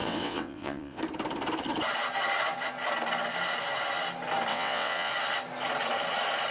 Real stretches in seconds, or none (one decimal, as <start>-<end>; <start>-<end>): 1.0-4.5; 5.1-6.5